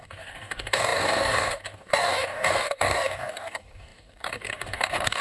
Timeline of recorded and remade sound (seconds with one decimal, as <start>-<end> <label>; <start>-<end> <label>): 0.0-5.2 remade